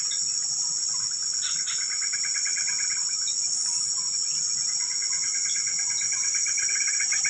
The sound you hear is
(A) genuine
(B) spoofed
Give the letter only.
A